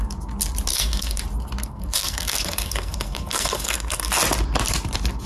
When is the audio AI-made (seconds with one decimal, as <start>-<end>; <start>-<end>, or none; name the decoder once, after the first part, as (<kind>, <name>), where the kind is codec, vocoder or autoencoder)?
0.7-1.2 (codec, SNAC); 1.6-4.1